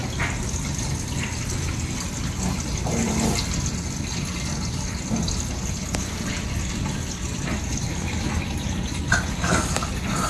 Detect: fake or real real